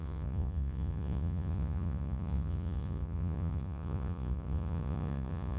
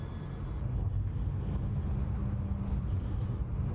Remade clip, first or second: first